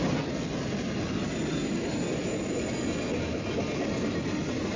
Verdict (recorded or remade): recorded